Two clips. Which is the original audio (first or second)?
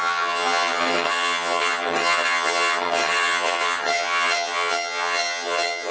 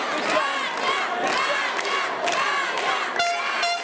second